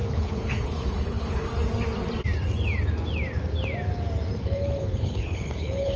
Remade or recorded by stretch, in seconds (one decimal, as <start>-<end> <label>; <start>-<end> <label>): 0.0-1.5 remade; 1.5-4.4 recorded; 4.4-6.0 remade